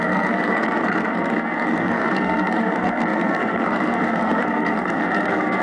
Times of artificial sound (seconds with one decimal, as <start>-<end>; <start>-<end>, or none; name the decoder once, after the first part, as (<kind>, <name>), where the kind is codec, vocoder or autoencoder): 0.0-5.6 (codec, SNAC)